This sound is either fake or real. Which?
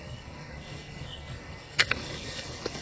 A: fake